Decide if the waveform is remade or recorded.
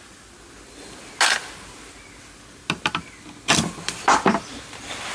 recorded